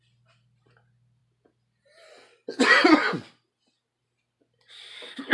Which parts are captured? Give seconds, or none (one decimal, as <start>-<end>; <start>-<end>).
0.0-5.3